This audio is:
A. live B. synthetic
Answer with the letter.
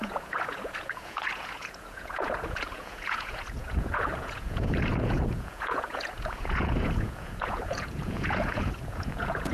B